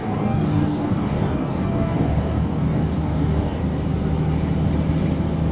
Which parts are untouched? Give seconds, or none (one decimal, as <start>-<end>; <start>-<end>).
3.6-5.5